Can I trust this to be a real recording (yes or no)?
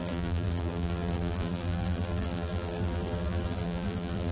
no